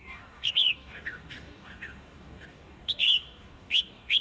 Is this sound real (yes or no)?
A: no